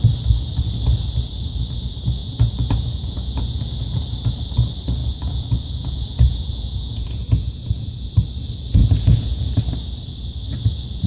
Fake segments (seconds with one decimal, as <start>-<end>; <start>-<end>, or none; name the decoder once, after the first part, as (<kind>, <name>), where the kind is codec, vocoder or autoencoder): 2.2-3.6 (vocoder, Vocos); 5.0-8.1; 8.8-9.6